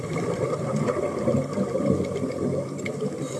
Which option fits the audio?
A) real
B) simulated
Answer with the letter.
B